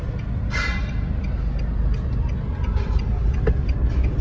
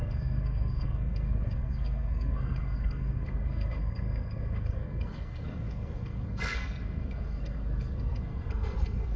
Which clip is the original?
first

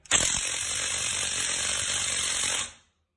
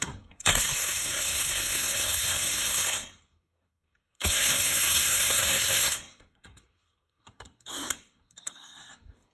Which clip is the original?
first